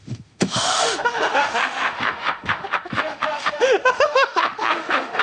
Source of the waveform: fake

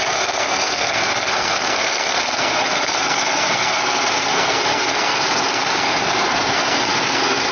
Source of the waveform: fake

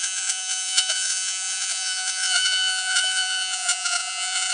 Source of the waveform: fake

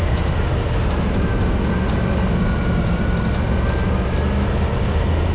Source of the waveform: real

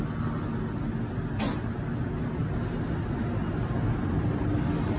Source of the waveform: real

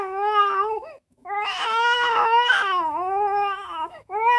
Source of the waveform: fake